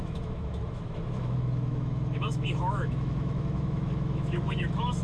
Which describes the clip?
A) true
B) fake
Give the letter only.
B